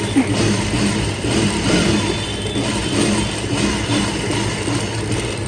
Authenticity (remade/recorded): recorded